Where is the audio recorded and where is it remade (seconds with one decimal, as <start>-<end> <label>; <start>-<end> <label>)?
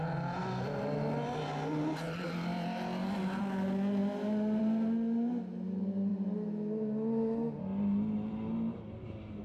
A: 0.0-9.4 recorded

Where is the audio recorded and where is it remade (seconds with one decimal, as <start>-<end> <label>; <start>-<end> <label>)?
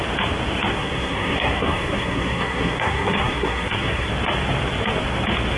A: 0.0-0.7 recorded; 0.7-4.1 remade; 4.1-5.6 recorded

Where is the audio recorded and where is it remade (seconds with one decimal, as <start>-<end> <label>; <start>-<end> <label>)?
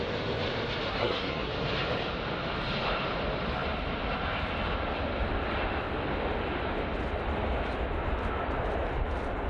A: 0.0-0.9 recorded; 0.9-1.5 remade; 1.5-9.5 recorded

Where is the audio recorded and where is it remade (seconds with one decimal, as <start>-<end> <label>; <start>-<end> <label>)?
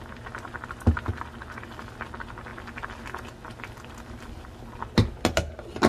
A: 0.0-5.9 recorded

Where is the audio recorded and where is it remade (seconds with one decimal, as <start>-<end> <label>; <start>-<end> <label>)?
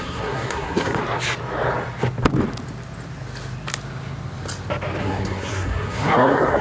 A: 0.0-1.0 remade; 1.0-5.0 recorded; 5.0-6.6 remade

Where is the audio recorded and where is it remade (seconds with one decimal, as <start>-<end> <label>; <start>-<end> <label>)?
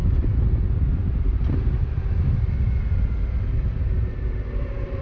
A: 0.0-5.0 recorded